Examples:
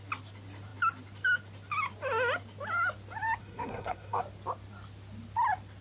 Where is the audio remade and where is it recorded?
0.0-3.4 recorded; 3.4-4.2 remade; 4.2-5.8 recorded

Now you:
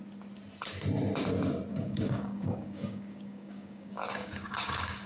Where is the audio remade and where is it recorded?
0.0-1.7 recorded; 1.7-5.1 remade

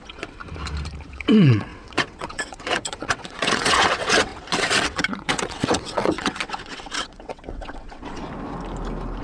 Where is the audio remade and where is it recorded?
0.0-0.4 remade; 0.4-1.1 recorded; 1.1-8.2 remade; 8.2-9.2 recorded

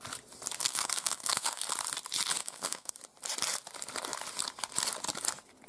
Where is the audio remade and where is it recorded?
0.0-0.6 recorded; 0.6-1.6 remade; 1.6-2.4 recorded; 2.4-2.9 remade; 2.9-5.7 recorded

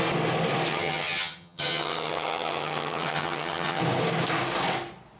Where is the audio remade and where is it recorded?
0.0-0.7 recorded; 0.7-3.8 remade; 3.8-5.2 recorded

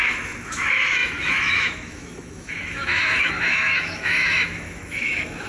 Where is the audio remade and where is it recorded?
0.0-5.5 remade

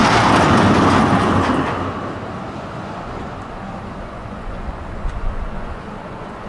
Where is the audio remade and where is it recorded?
0.0-2.6 recorded; 2.6-6.5 remade

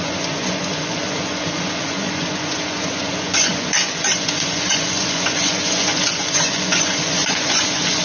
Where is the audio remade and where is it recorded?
0.0-8.0 remade